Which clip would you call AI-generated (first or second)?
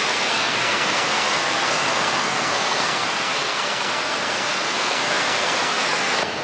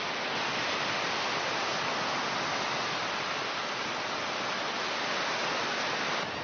first